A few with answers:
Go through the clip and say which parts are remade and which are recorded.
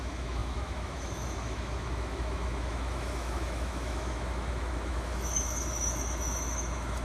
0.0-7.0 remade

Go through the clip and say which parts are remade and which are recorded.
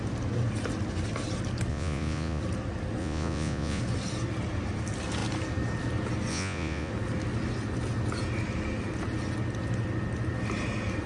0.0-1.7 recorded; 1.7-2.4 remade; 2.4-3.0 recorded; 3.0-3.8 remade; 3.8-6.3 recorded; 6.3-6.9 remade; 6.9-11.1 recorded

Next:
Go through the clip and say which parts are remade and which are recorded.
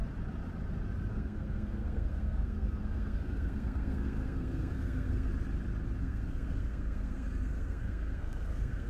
0.0-1.1 recorded; 1.1-5.3 remade; 5.3-6.0 recorded; 6.0-8.9 remade